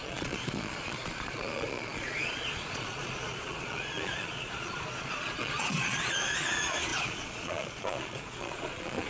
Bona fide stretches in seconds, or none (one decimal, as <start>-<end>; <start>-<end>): none